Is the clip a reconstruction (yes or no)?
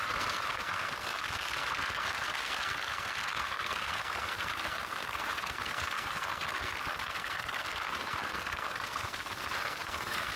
yes